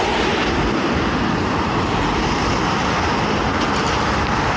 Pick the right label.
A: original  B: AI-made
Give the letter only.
A